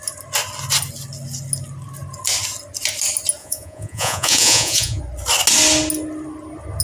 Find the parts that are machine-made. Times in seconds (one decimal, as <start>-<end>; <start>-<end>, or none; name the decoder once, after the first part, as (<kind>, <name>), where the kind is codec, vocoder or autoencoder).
3.4-5.0 (vocoder, Vocos)